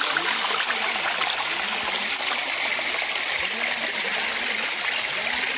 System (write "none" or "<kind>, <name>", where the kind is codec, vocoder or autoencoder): none